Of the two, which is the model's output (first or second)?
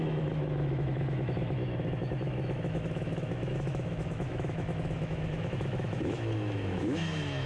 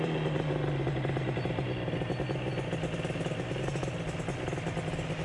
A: first